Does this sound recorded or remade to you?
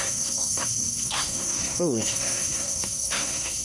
remade